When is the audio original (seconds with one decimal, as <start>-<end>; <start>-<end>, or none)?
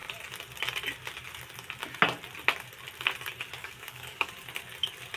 0.0-3.6; 4.3-5.2